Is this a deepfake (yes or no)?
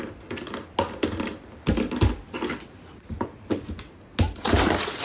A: no